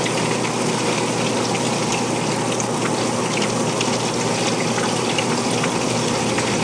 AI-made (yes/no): no